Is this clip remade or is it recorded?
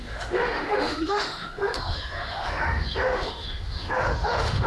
remade